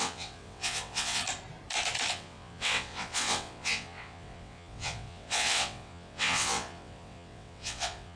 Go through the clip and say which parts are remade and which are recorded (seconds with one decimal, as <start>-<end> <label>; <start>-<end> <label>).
0.0-1.2 remade; 1.2-2.1 recorded; 2.1-8.2 remade